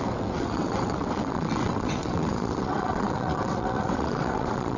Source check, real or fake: fake